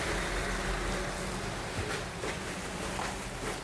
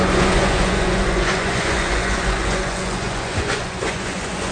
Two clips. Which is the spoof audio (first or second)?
second